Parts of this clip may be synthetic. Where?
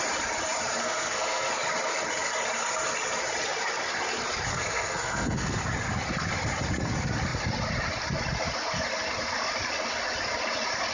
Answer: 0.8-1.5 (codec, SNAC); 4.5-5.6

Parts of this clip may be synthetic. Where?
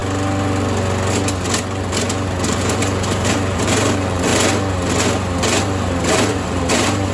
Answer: 2.5-4.3 (vocoder, BigVGAN v2); 5.6-7.1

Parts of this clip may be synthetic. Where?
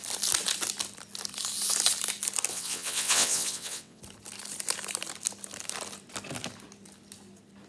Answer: 2.5-4.0 (vocoder, WaveNeXt)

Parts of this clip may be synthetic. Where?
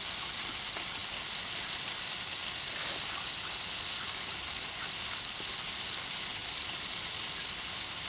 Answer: none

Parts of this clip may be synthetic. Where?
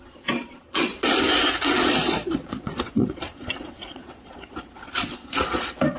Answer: 0.0-0.9 (vocoder, Vocos); 1.8-6.0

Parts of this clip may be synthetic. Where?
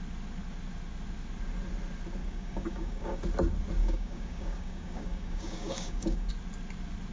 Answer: 2.2-3.2 (codec, DAC); 3.8-6.3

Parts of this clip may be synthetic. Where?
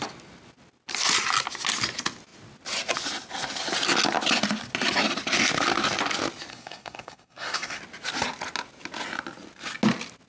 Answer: 6.5-7.8 (codec, SNAC)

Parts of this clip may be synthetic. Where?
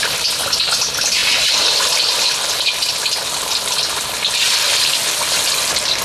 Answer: none